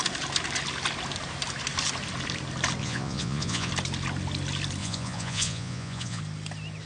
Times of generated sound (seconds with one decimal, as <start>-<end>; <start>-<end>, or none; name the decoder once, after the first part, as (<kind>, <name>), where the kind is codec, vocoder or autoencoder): 2.8-3.7 (vocoder, Vocos); 4.8-6.2